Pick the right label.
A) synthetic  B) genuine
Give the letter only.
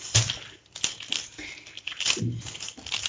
B